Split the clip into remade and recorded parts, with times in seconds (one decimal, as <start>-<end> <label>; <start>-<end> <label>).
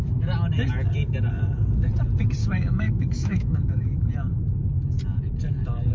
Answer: 0.0-2.4 recorded; 2.4-4.1 remade; 4.1-5.9 recorded